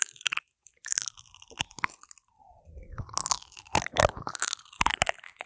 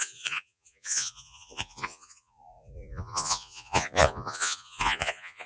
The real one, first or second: first